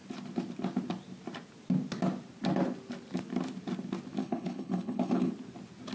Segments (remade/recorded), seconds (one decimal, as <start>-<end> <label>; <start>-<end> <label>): 0.0-4.2 recorded; 4.2-5.3 remade; 5.3-5.9 recorded